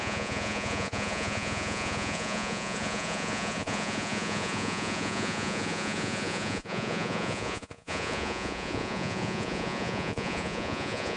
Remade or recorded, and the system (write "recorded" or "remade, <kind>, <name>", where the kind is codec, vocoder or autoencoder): remade, vocoder, Vocos